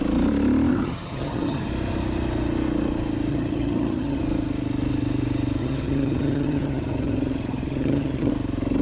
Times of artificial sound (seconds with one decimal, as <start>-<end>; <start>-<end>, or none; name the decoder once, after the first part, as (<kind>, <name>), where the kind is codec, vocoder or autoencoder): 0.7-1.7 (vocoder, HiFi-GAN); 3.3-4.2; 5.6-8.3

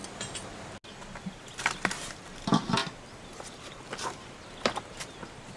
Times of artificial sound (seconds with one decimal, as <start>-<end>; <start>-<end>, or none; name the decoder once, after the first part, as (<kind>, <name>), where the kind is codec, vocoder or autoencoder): 0.0-0.7 (vocoder, BigVGAN v2); 2.8-5.6

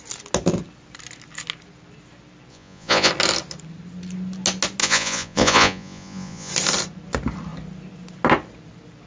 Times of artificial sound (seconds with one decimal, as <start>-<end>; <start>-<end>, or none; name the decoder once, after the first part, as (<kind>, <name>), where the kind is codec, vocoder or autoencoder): 2.5-3.1 (vocoder, Vocos); 4.8-6.5

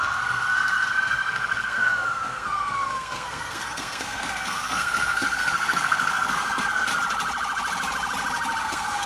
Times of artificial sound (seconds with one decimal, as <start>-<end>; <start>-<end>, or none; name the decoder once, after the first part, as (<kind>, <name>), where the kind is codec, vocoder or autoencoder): 0.0-6.9 (codec, SNAC); 8.6-9.1

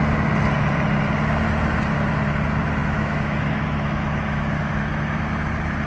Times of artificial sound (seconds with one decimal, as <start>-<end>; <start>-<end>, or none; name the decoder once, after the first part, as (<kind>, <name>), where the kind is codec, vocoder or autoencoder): 2.8-5.5 (autoencoder, DAC-VAE)

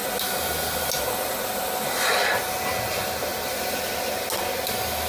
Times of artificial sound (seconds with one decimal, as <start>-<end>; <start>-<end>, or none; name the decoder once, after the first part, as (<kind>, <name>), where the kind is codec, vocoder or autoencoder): 3.3-3.9 (vocoder, BigVGAN v2)